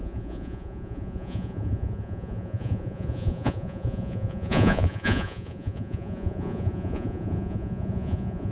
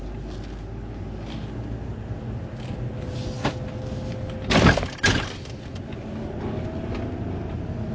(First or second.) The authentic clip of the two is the second